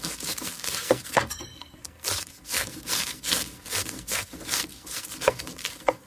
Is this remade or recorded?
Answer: remade